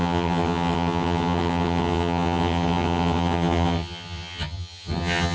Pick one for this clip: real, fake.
fake